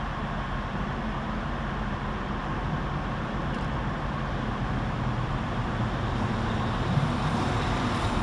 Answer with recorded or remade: remade